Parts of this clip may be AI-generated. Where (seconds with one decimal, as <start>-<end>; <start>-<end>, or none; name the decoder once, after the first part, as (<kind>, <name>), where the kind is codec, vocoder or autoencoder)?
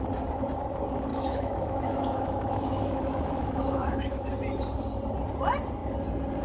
1.1-4.3 (autoencoder, DAC-VAE)